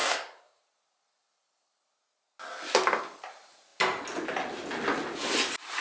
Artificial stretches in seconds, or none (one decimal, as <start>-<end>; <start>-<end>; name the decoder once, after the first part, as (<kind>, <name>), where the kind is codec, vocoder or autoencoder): 0.0-0.6 (codec, SNAC)